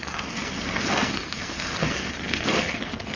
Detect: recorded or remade remade